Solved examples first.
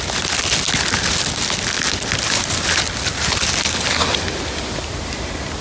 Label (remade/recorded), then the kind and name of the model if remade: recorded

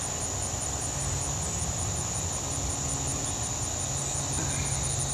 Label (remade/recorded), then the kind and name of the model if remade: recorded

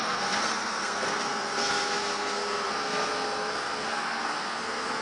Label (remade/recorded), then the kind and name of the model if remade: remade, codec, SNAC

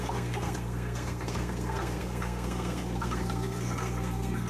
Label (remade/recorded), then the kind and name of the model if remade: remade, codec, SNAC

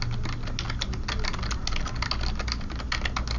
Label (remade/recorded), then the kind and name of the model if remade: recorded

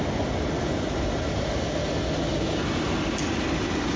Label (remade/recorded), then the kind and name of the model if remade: recorded